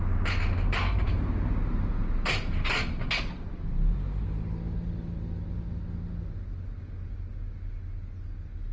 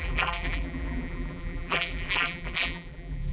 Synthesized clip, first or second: second